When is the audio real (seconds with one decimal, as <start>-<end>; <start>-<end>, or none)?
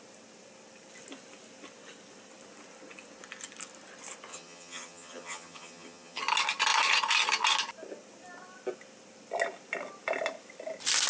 0.0-4.3; 6.2-11.1